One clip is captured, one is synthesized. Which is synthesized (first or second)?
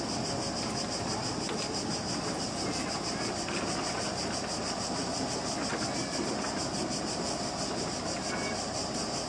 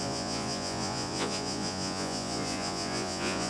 second